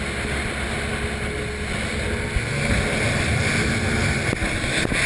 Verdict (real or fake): real